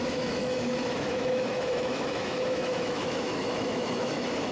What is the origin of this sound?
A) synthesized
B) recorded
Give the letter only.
A